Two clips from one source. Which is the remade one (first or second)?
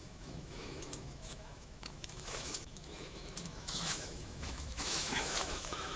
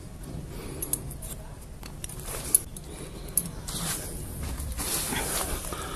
first